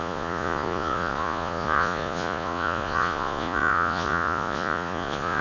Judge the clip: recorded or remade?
remade